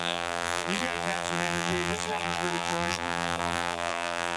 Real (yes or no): no